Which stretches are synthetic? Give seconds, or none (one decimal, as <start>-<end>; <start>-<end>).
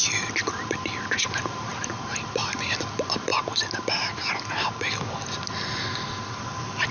none